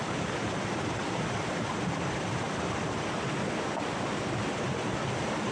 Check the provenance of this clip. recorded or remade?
recorded